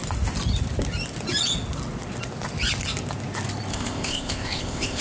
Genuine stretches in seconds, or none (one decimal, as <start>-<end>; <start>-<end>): 0.0-3.7